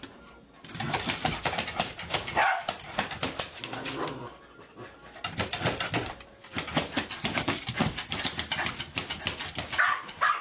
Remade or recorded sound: recorded